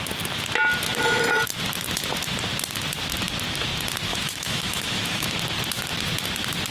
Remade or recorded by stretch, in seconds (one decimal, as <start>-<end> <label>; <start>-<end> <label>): 0.0-4.1 recorded; 4.1-5.3 remade; 5.3-6.7 recorded